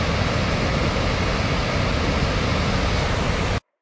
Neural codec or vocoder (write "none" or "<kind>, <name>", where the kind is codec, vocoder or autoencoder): none